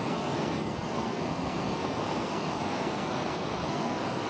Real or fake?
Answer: fake